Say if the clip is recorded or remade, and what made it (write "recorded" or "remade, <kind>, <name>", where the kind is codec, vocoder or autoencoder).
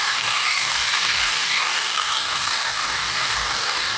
remade, codec, DAC